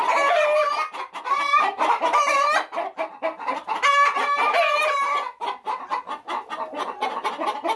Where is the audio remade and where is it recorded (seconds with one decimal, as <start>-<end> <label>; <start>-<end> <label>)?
0.0-7.8 recorded